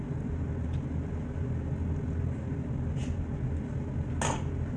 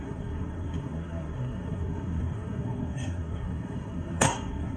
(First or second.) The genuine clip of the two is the first